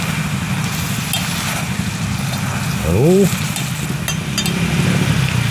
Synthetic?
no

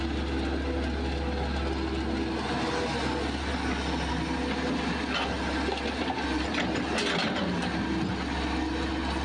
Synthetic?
no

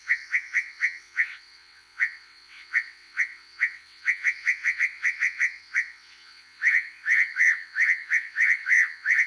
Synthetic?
yes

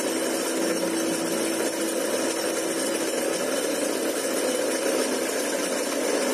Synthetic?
no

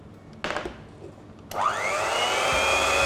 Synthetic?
no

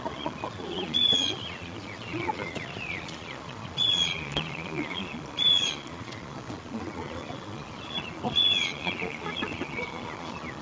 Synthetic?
yes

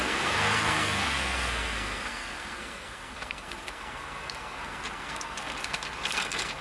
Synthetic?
yes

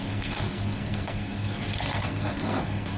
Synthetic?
yes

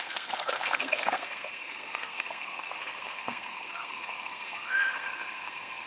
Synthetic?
yes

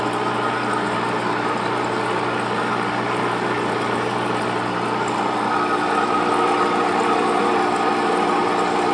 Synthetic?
no